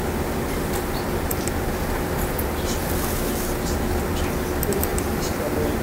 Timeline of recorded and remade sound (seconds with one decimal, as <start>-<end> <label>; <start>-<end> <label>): 0.0-1.3 recorded; 1.3-2.4 remade; 2.4-2.8 recorded; 2.8-3.3 remade; 3.3-4.9 recorded; 4.9-5.8 remade